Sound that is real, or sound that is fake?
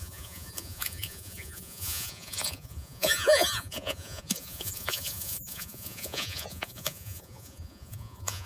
fake